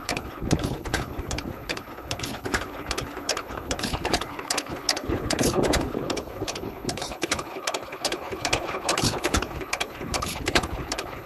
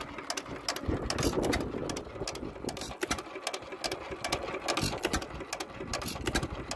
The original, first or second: second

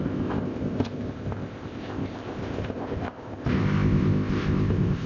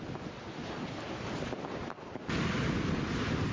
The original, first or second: second